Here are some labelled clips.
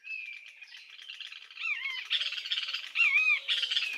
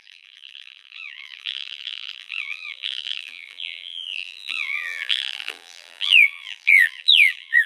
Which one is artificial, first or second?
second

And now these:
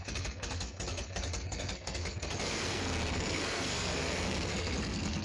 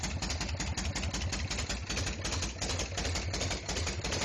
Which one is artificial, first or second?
first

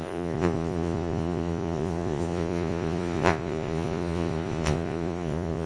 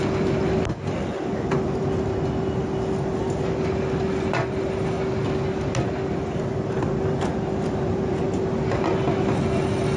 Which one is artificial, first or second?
first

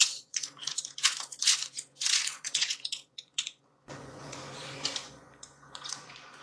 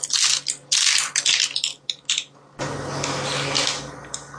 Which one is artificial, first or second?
first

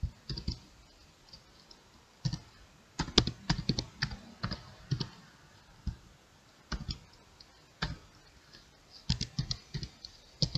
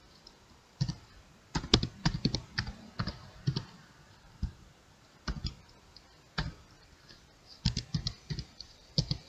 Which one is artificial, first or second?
second